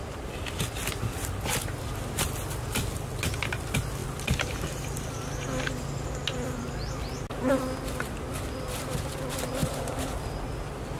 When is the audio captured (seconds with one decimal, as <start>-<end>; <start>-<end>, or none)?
0.0-11.0